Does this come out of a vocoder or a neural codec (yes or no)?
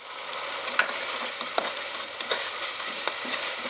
no